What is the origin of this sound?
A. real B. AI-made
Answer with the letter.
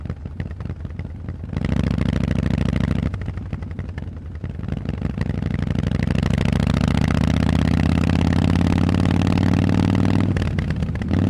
A